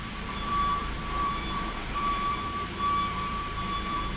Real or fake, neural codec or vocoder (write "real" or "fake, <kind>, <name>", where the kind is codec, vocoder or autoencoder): fake, vocoder, BigVGAN v2